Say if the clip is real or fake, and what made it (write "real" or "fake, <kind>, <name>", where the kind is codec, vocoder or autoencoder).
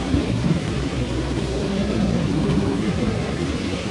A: fake, codec, SNAC